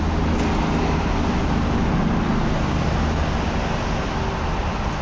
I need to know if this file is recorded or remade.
recorded